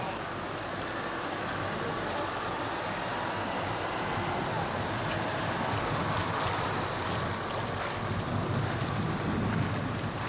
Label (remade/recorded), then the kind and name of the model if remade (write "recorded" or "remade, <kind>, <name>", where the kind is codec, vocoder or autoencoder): recorded